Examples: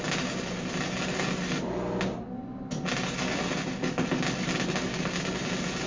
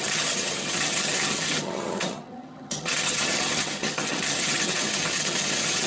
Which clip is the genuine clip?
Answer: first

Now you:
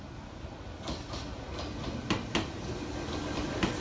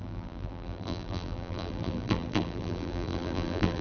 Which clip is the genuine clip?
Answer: first